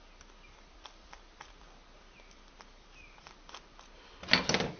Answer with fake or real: real